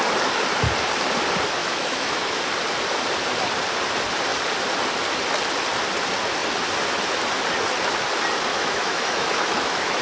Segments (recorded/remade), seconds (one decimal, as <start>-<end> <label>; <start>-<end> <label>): 0.0-1.6 recorded; 1.6-2.4 remade; 2.4-8.5 recorded; 8.5-10.0 remade